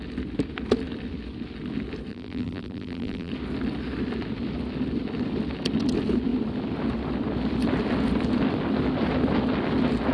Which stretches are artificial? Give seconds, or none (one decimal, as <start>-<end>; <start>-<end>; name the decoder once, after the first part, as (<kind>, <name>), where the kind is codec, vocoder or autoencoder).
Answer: 2.1-3.3 (vocoder, BigVGAN v2)